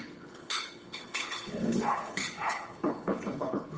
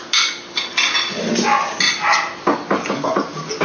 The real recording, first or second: second